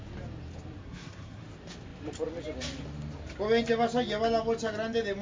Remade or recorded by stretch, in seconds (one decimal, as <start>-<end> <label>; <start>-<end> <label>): 0.0-0.8 recorded; 0.8-1.4 remade; 1.4-5.2 recorded